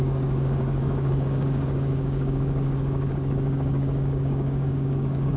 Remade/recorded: remade